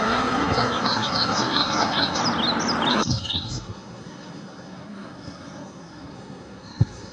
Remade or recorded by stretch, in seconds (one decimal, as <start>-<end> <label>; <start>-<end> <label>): 0.0-2.2 remade; 2.2-2.9 recorded; 2.9-7.1 remade